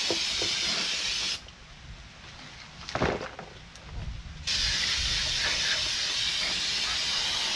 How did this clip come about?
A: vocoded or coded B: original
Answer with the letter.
B